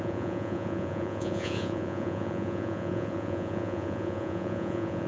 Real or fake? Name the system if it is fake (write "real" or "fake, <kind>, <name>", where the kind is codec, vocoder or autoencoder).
fake, vocoder, Vocos